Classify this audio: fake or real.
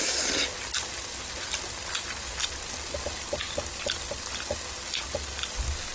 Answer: real